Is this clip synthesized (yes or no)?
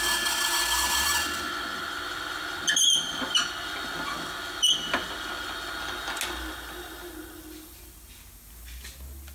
no